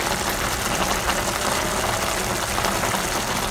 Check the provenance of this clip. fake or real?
real